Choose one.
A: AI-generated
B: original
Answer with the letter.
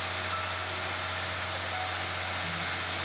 B